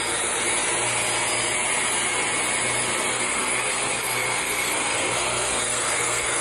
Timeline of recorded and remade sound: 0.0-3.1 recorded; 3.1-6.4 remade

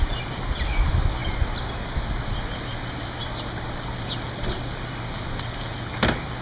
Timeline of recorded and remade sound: 0.0-6.4 recorded

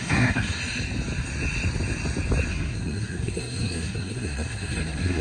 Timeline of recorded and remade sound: 0.0-0.6 remade; 0.6-2.5 recorded; 2.5-5.2 remade